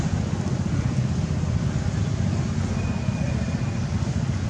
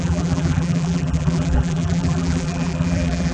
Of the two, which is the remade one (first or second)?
second